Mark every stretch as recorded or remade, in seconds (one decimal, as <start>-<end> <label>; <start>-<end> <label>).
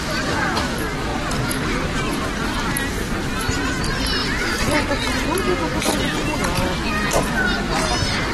0.0-1.1 recorded; 1.1-2.2 remade; 2.2-4.2 recorded; 4.2-4.8 remade; 4.8-5.7 recorded; 5.7-6.4 remade; 6.4-8.3 recorded